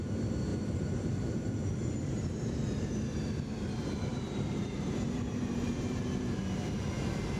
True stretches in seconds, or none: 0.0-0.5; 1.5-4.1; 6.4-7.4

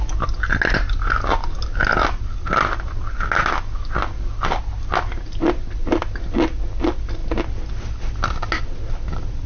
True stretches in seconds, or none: 0.0-9.5

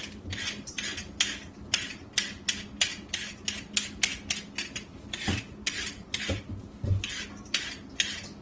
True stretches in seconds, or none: 0.0-8.4

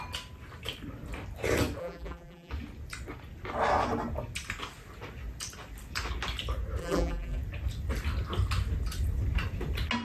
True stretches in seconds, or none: 0.0-1.8; 2.5-6.8; 7.4-10.0

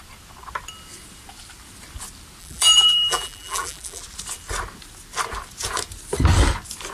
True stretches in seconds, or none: 0.0-2.4; 4.0-6.9

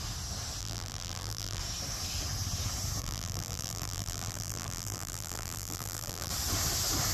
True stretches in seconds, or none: 0.0-0.6; 1.6-3.0; 6.3-7.1

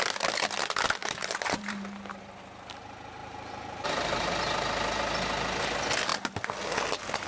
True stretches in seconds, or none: 0.0-1.0; 2.2-3.2; 4.3-7.3

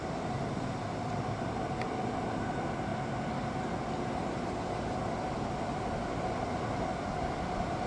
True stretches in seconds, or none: 2.9-6.8